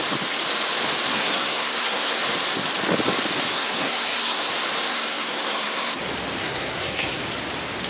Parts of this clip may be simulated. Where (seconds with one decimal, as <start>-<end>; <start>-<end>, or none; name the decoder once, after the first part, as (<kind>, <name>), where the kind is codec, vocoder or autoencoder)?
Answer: 1.1-2.2 (codec, SNAC); 3.5-4.5; 4.9-6.0; 6.4-7.2